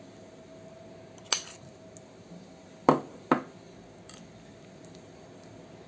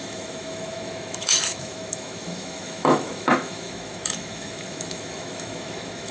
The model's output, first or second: second